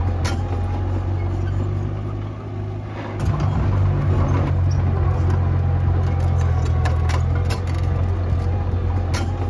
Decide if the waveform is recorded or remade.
recorded